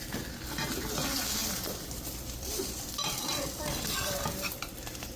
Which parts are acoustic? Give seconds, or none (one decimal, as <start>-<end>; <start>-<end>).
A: 0.0-1.4; 4.5-5.2